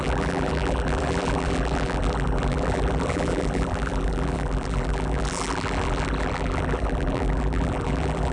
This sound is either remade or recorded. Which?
remade